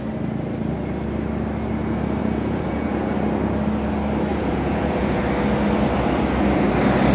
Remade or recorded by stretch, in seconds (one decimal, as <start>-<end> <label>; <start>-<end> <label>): 0.0-2.2 recorded; 2.2-3.1 remade; 3.1-4.3 recorded; 4.3-5.2 remade; 5.2-7.1 recorded